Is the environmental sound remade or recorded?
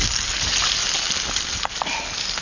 recorded